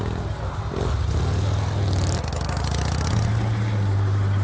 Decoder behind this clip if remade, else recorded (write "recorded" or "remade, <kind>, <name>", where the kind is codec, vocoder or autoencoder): recorded